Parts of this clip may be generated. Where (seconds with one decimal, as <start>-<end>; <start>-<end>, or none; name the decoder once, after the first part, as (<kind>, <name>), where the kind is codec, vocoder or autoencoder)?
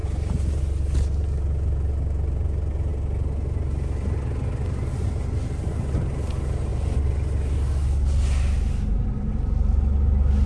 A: 0.0-0.6 (vocoder, BigVGAN v2)